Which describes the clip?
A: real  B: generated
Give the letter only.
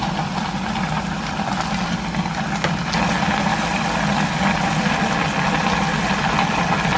A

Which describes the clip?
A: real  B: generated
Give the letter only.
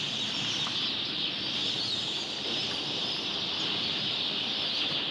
A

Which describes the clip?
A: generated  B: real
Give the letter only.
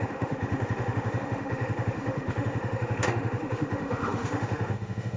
A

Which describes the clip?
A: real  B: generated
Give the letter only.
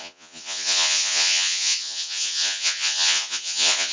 B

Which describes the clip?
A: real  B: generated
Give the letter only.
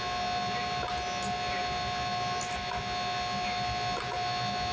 A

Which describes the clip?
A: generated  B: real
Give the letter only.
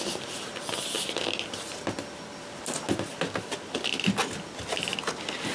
B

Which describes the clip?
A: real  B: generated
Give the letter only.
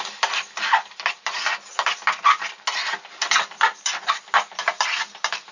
A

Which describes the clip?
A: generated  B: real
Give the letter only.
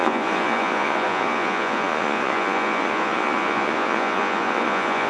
A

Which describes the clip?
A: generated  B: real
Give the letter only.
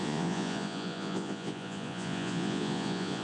A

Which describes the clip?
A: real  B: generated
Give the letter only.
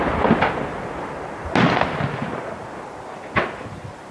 A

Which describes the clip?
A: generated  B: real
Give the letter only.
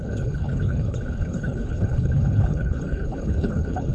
A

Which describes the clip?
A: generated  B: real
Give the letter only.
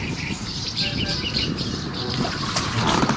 A